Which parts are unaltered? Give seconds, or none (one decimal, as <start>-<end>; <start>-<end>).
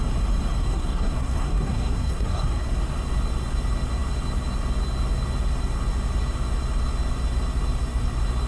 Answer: 0.0-0.6; 2.7-8.5